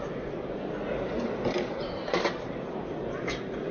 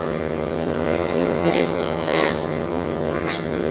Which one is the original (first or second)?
first